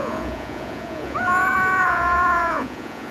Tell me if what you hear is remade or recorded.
remade